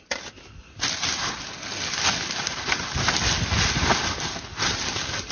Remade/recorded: recorded